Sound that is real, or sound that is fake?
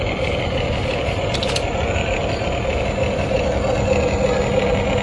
real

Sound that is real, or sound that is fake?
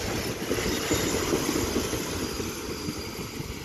real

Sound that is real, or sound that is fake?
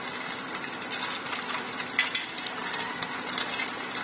real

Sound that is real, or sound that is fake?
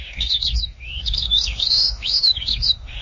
fake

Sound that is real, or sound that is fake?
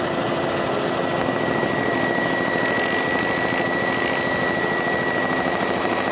real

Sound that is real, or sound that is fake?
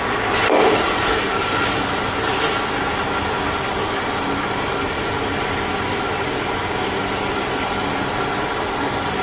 real